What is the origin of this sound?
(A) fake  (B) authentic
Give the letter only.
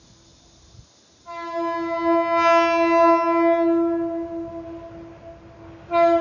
B